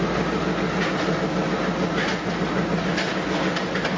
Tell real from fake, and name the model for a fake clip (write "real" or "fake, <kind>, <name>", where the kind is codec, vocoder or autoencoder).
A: real